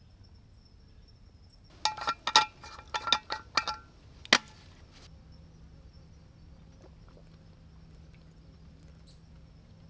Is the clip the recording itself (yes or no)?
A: yes